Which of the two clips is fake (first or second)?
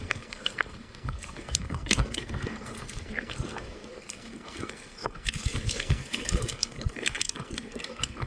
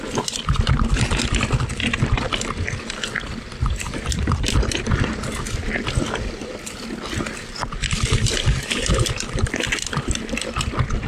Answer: first